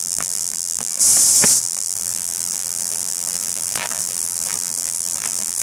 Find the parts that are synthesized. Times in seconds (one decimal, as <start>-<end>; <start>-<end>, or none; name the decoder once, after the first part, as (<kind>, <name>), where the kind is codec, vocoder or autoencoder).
0.0-1.0 (vocoder, BigVGAN v2); 1.6-5.6